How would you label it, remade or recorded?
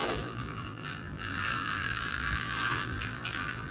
remade